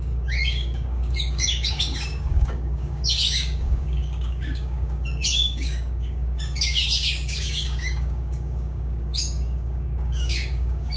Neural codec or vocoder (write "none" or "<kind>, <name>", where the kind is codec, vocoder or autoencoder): codec, DAC